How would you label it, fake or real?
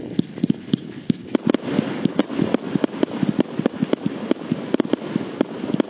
real